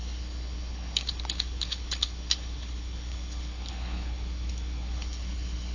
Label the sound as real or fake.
fake